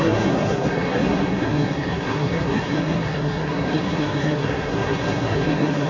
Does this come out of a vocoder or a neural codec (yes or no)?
yes